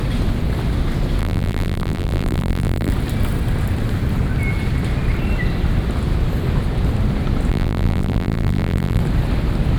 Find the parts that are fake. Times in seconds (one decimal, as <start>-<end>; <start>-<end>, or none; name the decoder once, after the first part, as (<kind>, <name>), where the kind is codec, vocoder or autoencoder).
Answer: 1.2-2.9 (vocoder, BigVGAN v2); 7.5-9.0